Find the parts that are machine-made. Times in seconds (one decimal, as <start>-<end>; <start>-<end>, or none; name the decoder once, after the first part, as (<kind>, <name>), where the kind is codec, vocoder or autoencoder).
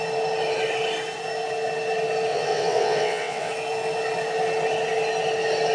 2.3-3.5 (vocoder, WaveNeXt)